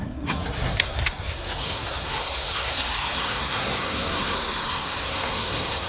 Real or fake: fake